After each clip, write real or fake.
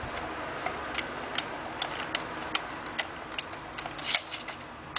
real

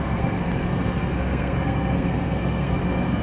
fake